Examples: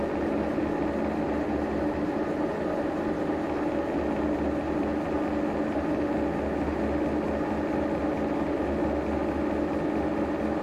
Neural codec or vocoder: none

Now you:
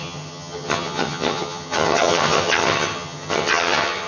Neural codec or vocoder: vocoder, HiFi-GAN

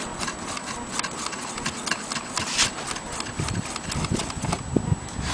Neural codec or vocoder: none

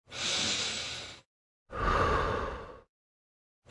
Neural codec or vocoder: none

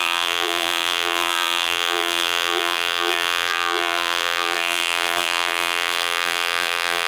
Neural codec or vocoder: vocoder, BigVGAN v2